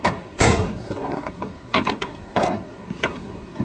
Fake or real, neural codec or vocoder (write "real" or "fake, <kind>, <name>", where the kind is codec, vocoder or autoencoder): fake, codec, SNAC